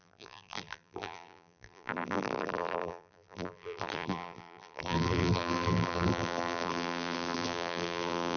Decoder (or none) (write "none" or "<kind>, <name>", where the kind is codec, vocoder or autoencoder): vocoder, BigVGAN v2